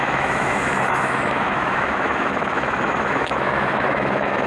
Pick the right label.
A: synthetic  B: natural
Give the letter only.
A